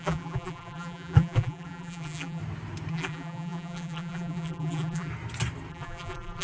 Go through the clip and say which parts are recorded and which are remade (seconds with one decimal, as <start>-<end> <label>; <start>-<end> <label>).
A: 0.0-2.4 remade; 2.4-2.9 recorded; 2.9-5.1 remade; 5.1-5.7 recorded; 5.7-6.4 remade